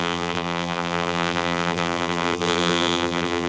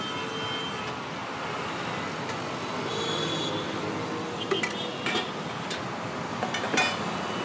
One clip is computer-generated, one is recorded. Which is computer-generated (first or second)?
first